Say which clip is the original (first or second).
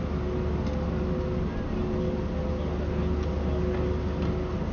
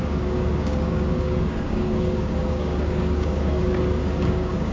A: first